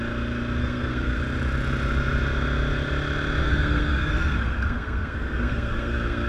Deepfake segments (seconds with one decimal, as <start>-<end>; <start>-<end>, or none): 0.6-1.2; 3.4-6.3